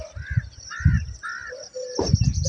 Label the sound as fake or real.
real